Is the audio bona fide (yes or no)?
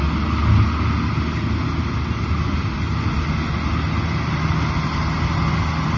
yes